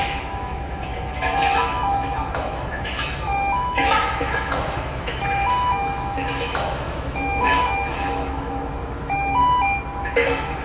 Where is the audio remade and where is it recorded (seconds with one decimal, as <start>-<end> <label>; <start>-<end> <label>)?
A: 0.0-9.4 remade; 9.4-10.0 recorded; 10.0-10.6 remade

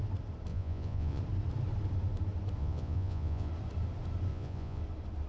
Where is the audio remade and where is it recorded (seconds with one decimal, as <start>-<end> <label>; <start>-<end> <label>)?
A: 0.0-0.5 recorded; 0.5-1.2 remade; 1.2-2.6 recorded; 2.6-3.5 remade; 3.5-4.3 recorded; 4.3-4.8 remade; 4.8-5.3 recorded

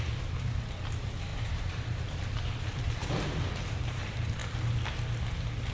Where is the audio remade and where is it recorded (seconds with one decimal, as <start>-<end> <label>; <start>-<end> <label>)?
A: 0.0-3.0 remade; 3.0-3.7 recorded; 3.7-4.4 remade; 4.4-5.7 recorded

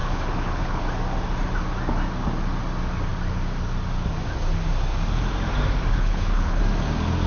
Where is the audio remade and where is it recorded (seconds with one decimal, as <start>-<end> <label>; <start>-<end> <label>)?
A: 0.0-0.8 remade; 0.8-5.9 recorded; 5.9-6.6 remade; 6.6-7.3 recorded

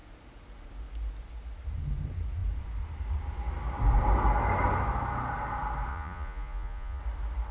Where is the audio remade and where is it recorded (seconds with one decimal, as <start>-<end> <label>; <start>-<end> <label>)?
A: 0.0-5.9 recorded; 5.9-7.0 remade; 7.0-7.5 recorded

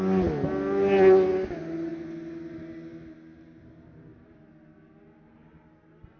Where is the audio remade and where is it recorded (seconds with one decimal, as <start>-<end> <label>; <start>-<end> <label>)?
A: 0.0-6.2 recorded